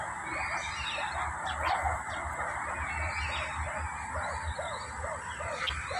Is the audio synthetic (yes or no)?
no